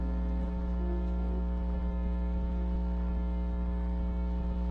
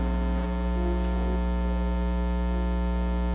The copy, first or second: first